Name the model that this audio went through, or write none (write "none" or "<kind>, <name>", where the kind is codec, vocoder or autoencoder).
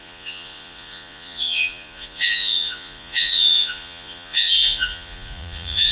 vocoder, Vocos